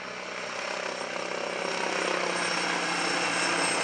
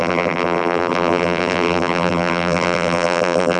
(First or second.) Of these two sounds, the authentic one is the first